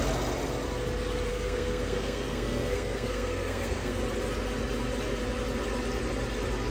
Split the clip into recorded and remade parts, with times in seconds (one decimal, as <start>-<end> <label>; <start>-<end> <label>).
0.0-1.3 recorded; 1.3-4.0 remade; 4.0-6.7 recorded